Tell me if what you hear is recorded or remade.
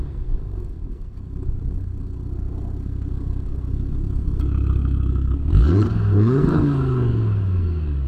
remade